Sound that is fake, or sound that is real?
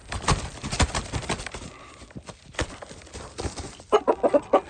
real